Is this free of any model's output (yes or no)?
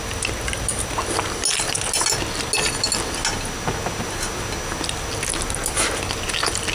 yes